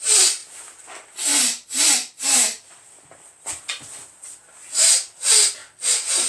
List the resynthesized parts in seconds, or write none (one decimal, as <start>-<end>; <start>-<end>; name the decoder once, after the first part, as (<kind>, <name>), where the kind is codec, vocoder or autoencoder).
none